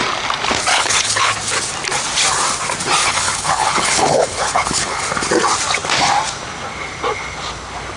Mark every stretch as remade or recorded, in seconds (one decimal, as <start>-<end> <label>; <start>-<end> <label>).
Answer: 0.0-0.7 recorded; 0.7-1.3 remade; 1.3-3.0 recorded; 3.0-5.0 remade; 5.0-8.0 recorded